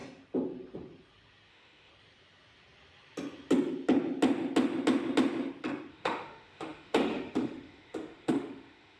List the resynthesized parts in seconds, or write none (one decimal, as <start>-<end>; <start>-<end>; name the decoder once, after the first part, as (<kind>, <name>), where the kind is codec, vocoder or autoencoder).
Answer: 1.5-1.9 (autoencoder, DAC-VAE); 5.9-9.0